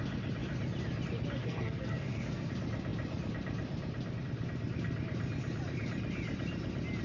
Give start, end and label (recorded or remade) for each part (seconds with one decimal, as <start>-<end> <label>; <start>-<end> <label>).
0.0-1.4 recorded; 1.4-2.5 remade; 2.5-7.0 recorded